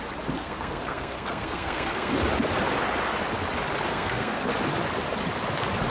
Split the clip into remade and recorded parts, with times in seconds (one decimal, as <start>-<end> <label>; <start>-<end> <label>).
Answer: 0.0-0.4 recorded; 0.4-2.1 remade; 2.1-3.9 recorded; 3.9-4.5 remade; 4.5-5.9 recorded